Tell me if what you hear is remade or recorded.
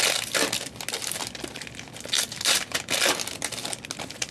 recorded